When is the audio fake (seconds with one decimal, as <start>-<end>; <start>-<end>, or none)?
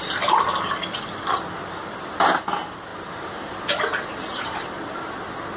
2.9-5.1